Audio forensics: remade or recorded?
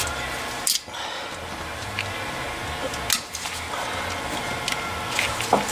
recorded